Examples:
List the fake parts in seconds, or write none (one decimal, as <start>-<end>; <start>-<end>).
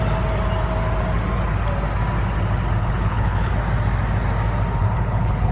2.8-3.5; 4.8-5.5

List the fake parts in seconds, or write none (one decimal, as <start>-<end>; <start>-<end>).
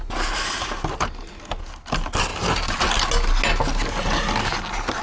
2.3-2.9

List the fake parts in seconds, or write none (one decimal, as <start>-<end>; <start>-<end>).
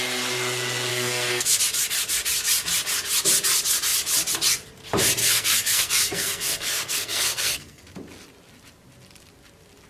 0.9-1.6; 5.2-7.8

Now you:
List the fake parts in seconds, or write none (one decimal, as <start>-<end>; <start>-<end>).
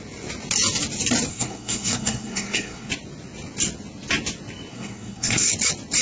1.3-2.9; 4.7-5.5